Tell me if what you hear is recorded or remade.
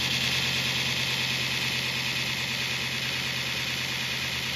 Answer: recorded